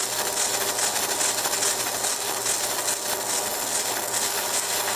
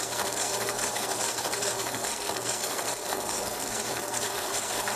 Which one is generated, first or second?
second